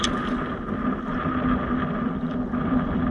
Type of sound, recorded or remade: recorded